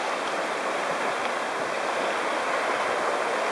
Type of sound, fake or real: real